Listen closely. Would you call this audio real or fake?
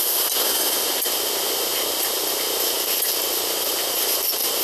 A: real